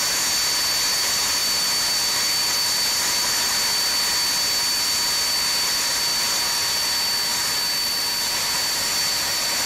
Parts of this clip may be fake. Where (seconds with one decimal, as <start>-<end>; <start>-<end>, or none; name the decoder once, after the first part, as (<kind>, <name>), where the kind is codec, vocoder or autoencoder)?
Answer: none